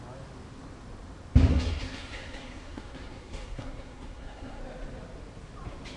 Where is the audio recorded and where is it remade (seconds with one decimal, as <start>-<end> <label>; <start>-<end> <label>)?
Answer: 0.0-1.5 recorded; 1.5-4.6 remade; 4.6-6.0 recorded

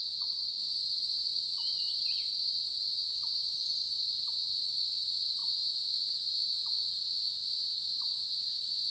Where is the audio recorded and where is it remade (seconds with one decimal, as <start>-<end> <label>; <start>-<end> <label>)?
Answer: 0.0-2.6 remade; 2.6-4.3 recorded; 4.3-8.9 remade

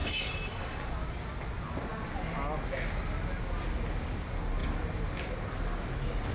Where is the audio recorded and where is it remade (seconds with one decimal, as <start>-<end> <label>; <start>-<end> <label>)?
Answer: 0.0-0.6 remade; 0.6-6.3 recorded

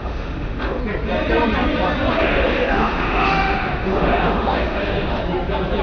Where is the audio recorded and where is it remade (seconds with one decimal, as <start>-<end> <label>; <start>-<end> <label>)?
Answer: 0.0-0.8 remade; 0.8-2.1 recorded; 2.1-5.2 remade; 5.2-5.8 recorded

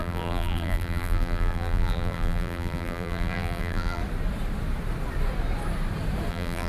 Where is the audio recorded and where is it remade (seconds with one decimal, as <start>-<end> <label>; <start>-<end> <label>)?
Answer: 0.0-4.0 remade; 4.0-6.3 recorded; 6.3-6.7 remade

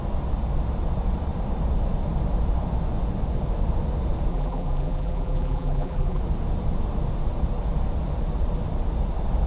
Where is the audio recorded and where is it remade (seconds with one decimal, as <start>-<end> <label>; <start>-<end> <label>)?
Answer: 0.0-4.3 recorded; 4.3-6.2 remade; 6.2-9.5 recorded

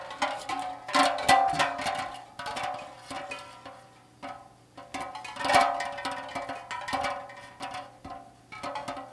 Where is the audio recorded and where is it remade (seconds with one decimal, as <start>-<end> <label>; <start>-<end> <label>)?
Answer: 0.0-9.1 recorded

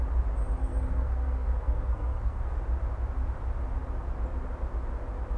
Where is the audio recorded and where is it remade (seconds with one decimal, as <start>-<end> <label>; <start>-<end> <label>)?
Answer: 0.0-0.6 recorded; 0.6-2.6 remade; 2.6-5.4 recorded